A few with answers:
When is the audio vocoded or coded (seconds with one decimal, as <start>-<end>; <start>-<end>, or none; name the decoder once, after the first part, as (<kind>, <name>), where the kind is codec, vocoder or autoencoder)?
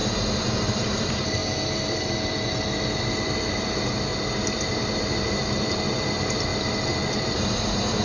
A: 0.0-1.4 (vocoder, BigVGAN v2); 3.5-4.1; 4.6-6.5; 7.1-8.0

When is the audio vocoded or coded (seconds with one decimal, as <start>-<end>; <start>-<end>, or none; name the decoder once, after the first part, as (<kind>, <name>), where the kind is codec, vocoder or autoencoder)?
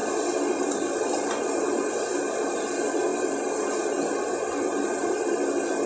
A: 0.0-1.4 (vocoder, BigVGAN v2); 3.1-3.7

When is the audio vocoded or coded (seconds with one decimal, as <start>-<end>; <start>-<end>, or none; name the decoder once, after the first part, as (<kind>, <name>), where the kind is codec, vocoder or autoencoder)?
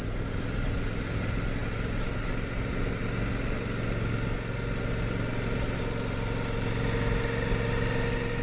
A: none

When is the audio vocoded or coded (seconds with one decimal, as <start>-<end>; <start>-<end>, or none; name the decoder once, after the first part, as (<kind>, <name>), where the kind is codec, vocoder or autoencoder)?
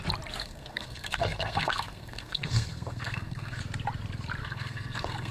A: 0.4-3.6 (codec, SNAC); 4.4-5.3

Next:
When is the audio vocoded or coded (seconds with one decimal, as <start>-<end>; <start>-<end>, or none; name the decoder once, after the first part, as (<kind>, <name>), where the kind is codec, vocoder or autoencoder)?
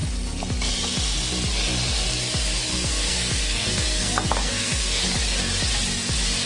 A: 2.7-5.0 (codec, SNAC)